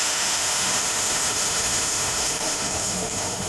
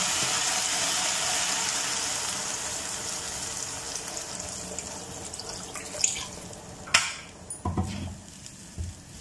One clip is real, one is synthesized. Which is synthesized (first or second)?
first